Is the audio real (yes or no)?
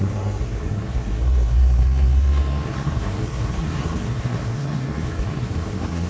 no